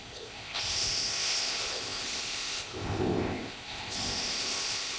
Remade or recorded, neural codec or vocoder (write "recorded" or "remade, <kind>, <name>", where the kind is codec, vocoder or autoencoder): remade, codec, ZipCodec